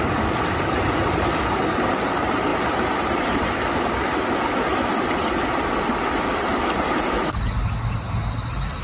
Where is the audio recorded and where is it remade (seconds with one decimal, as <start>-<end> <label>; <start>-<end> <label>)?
0.0-8.8 recorded